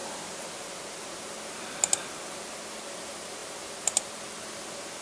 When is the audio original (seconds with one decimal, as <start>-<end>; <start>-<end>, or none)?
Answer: 0.5-5.0